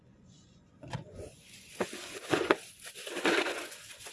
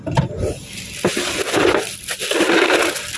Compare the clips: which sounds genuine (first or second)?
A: second